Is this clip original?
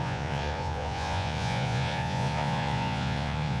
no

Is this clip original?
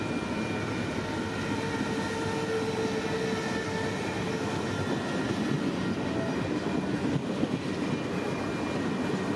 yes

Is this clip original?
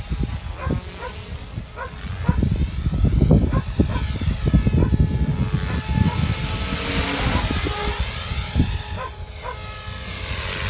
yes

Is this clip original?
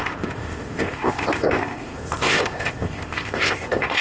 no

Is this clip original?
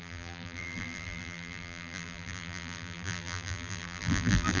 no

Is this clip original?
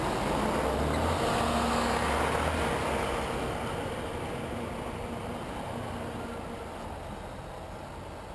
yes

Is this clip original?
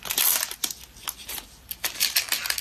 yes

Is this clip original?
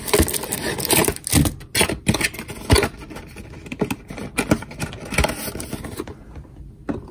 yes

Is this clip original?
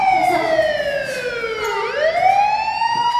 yes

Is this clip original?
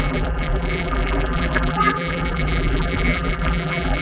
no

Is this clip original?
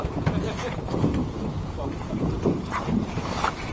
yes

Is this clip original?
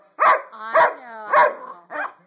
yes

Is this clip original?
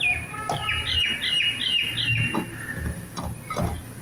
yes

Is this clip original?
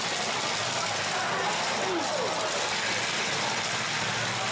yes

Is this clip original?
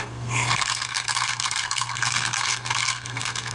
no